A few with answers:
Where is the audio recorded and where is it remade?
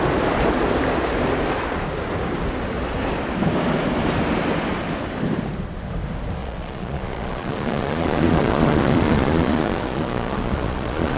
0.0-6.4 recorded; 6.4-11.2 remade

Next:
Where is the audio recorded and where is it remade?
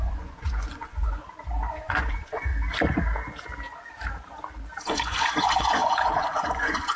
0.0-1.2 remade; 1.2-1.7 recorded; 1.7-2.5 remade; 2.5-4.8 recorded; 4.8-7.0 remade